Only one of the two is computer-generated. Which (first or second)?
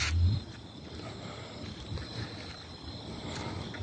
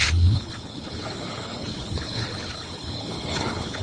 second